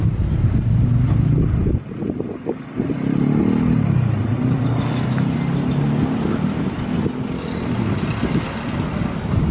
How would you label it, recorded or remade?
recorded